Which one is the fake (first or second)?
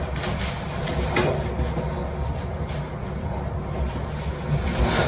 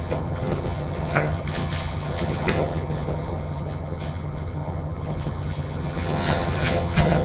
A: second